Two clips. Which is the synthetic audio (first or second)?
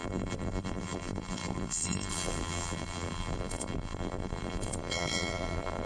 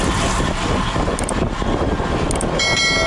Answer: first